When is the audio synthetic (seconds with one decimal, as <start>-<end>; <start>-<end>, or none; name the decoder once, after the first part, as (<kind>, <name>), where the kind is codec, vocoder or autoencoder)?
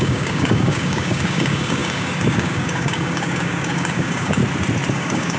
0.0-4.4 (codec, DAC); 4.9-5.4